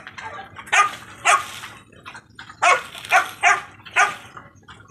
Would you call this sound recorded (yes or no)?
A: yes